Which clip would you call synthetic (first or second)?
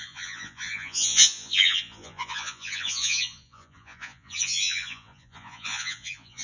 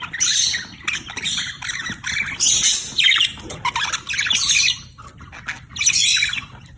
first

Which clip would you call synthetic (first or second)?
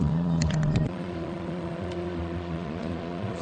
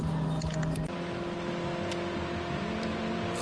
first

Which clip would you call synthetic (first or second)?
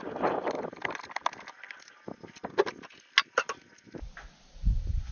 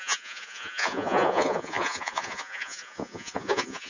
second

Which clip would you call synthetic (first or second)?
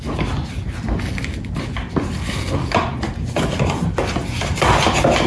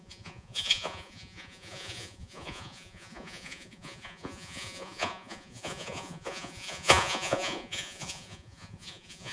second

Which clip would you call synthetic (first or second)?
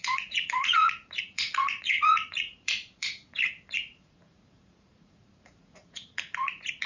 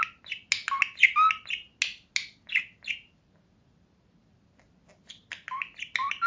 first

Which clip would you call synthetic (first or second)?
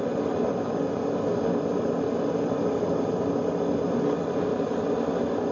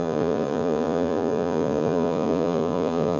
second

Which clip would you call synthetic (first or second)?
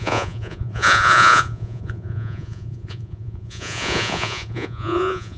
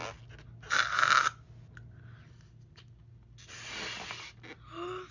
first